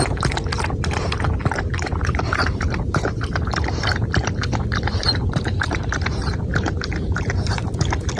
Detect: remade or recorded remade